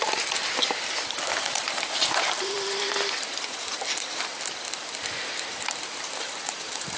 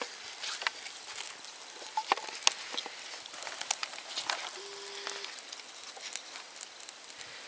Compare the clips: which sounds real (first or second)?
second